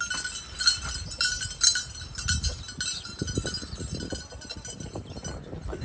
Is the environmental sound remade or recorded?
recorded